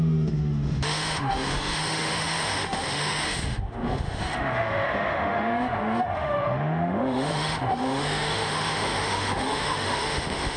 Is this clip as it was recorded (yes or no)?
no